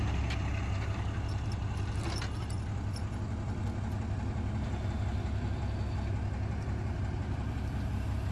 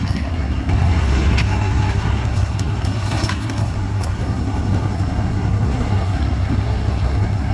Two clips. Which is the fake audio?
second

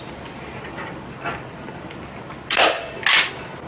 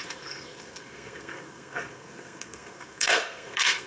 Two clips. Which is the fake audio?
second